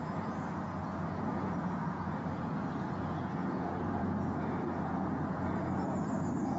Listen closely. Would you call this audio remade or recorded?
remade